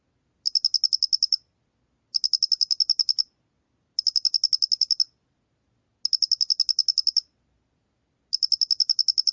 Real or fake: real